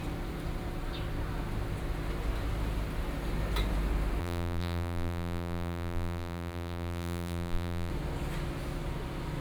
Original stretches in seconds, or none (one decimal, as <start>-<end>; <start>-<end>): 0.0-4.2; 7.9-9.4